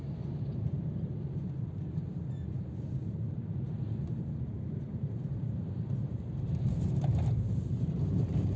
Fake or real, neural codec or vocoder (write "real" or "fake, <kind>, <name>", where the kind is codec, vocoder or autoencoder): fake, vocoder, BigVGAN v2